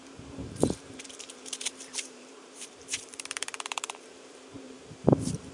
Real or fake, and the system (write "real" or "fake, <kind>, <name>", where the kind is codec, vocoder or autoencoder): fake, vocoder, BigVGAN v2